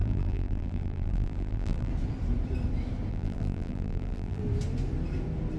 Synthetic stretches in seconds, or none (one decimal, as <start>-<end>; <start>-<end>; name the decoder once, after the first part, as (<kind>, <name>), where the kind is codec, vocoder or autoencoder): 0.0-1.9 (vocoder, BigVGAN v2); 3.1-4.4